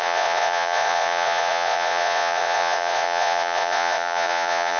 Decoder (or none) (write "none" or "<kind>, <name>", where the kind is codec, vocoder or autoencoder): vocoder, Vocos